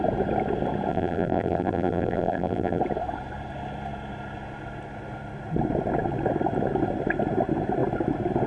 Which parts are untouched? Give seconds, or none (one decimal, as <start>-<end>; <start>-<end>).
0.0-0.9; 2.8-8.5